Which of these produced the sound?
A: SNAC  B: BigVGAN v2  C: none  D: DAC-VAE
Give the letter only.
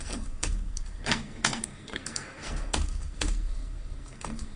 A